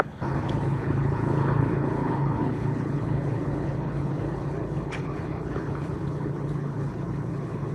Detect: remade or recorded remade